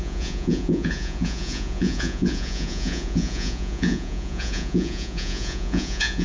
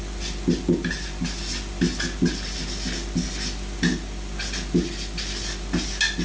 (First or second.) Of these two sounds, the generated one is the first